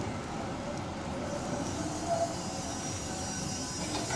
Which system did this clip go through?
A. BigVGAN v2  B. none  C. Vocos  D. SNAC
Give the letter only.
B